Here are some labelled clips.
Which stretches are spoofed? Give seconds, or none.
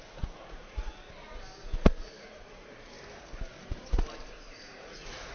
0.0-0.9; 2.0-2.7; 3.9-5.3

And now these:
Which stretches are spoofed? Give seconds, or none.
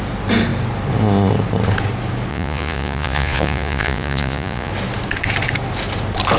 2.3-4.7